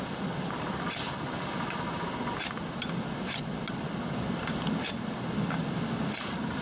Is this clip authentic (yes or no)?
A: yes